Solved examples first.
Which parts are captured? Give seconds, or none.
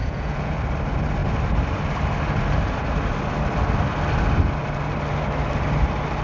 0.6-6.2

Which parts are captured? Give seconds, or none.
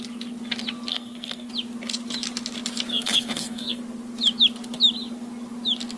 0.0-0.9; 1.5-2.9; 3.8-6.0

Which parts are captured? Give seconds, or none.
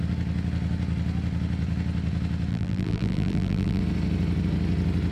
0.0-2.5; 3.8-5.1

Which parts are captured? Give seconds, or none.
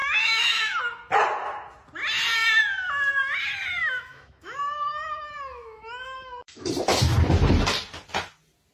0.8-3.8; 6.7-8.7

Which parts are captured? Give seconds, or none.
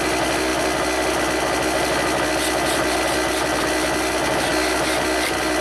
0.0-5.6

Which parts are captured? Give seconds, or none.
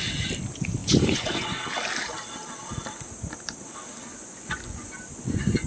0.0-0.8; 1.6-4.1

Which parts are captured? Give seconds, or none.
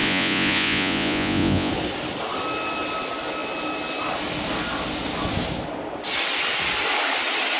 1.7-7.6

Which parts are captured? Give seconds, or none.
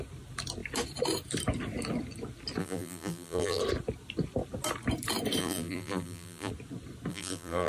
0.0-2.6; 3.6-5.4; 6.5-7.1